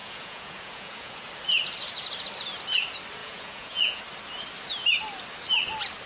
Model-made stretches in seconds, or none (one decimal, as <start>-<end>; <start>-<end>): 0.0-1.3; 3.2-4.0